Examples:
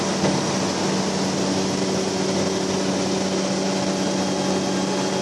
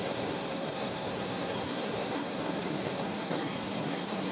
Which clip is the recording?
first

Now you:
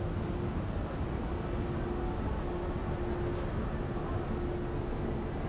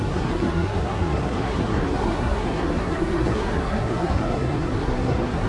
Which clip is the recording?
first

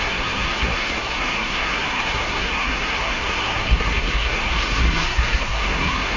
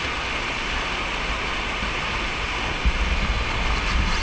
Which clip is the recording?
second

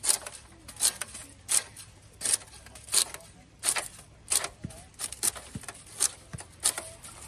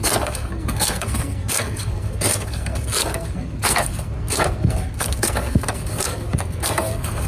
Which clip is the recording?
first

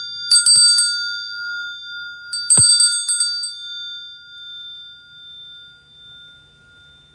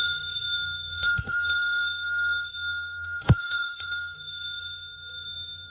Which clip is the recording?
first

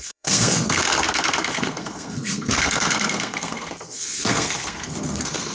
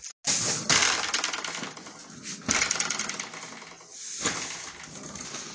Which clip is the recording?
second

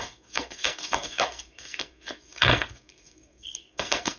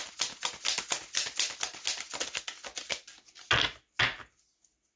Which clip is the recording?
second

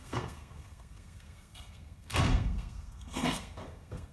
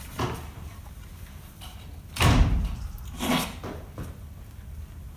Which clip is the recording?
second